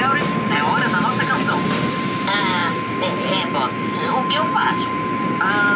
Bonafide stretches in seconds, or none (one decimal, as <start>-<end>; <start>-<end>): 0.0-5.8

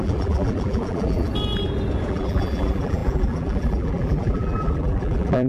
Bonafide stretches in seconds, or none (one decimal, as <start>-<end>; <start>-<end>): 1.3-2.1

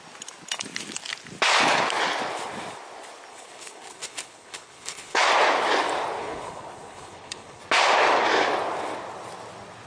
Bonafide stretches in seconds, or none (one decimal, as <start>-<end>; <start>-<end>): 0.0-3.3; 5.2-6.2; 7.6-9.9

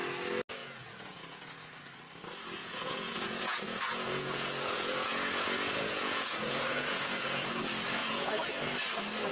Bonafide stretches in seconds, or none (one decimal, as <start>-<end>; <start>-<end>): 0.0-0.6; 1.4-2.6; 7.6-8.0; 8.5-9.3

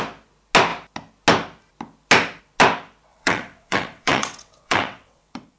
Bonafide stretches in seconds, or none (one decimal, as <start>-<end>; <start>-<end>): 0.0-3.1

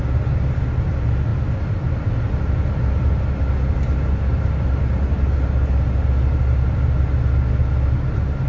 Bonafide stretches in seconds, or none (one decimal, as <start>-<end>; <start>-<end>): 0.0-8.5

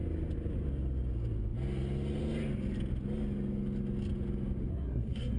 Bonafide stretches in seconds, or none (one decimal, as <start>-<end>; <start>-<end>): 0.0-4.7